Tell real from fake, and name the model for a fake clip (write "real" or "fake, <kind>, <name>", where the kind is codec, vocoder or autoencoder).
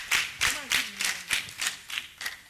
real